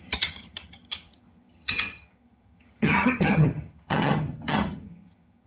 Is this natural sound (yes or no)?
no